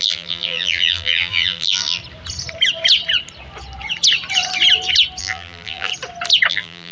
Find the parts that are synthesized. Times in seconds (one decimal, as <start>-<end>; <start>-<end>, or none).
0.0-2.0; 5.2-5.9; 6.5-6.9